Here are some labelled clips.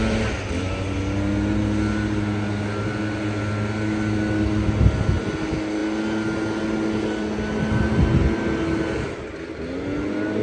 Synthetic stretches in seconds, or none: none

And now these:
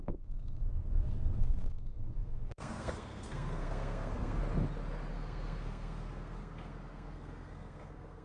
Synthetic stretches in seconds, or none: 0.0-4.4 (codec, SNAC); 5.1-8.2

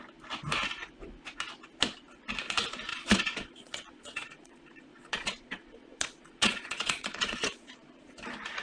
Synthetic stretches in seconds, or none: 2.9-8.1 (vocoder, Vocos)

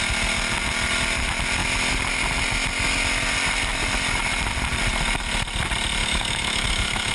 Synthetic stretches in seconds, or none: 6.0-7.1 (autoencoder, DAC-VAE)